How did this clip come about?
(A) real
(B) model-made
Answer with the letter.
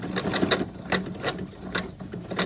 A